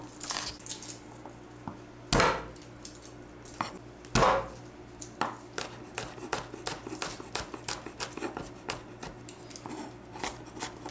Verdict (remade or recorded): recorded